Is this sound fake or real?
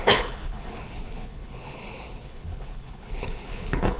fake